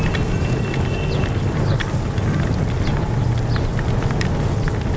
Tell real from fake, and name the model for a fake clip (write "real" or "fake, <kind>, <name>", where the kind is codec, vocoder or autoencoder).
real